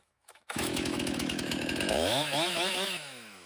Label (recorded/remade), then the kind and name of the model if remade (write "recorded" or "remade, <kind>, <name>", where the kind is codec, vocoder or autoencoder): remade, autoencoder, DAC-VAE